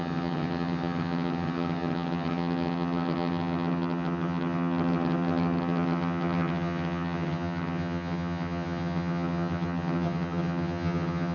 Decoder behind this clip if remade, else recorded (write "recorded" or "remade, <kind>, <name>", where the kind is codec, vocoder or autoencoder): remade, vocoder, HiFi-GAN